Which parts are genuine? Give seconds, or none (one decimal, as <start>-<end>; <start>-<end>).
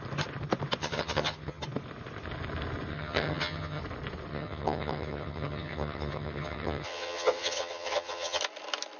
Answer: 0.0-0.8; 1.6-2.9; 3.8-4.3; 8.4-9.0